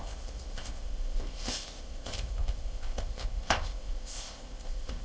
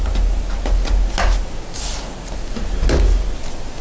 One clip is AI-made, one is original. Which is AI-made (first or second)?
first